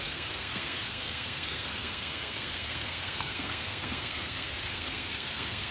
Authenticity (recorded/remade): remade